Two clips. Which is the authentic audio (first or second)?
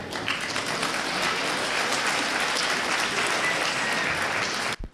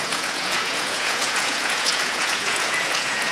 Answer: first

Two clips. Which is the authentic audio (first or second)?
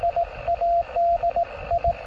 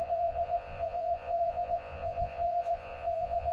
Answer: first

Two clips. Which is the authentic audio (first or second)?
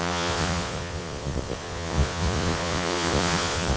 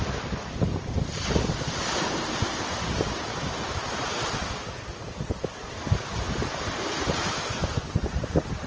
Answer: second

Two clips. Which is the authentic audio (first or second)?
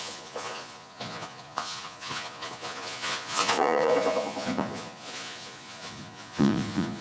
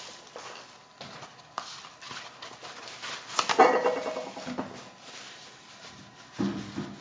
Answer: second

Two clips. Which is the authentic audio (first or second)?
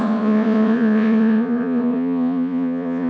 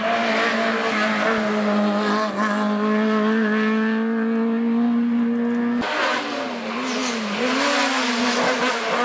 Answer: second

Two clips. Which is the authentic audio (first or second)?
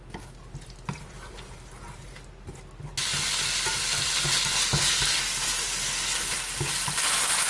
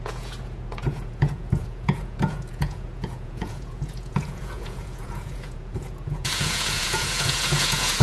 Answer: first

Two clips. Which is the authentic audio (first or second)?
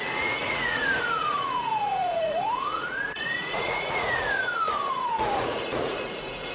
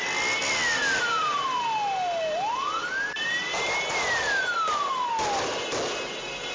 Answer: second